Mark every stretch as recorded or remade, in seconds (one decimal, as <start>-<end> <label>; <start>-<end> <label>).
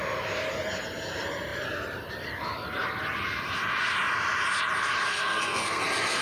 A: 0.0-5.1 recorded; 5.1-5.8 remade; 5.8-6.2 recorded